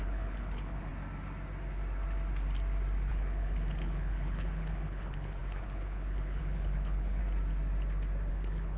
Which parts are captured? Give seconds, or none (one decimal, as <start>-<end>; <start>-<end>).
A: 0.9-3.1; 7.2-8.3